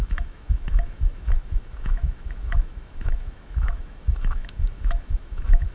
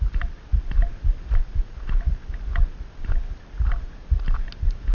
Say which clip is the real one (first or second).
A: second